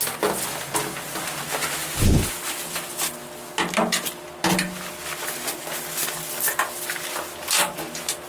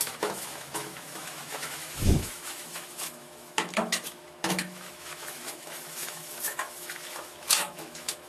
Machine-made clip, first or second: second